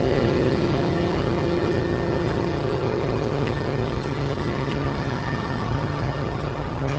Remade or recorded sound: remade